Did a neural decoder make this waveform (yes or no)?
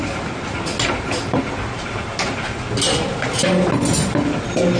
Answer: no